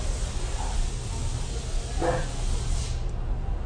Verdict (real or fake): real